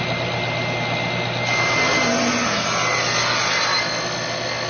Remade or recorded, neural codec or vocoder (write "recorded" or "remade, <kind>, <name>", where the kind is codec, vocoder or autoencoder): recorded